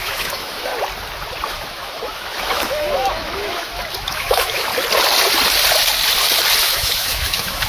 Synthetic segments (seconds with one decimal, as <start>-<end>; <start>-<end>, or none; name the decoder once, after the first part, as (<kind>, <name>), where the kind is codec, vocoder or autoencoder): 0.0-0.7 (autoencoder, DAC-VAE); 1.5-4.7; 6.6-7.7